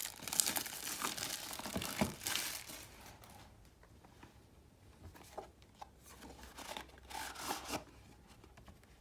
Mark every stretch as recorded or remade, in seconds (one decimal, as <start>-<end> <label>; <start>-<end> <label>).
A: 0.0-9.0 recorded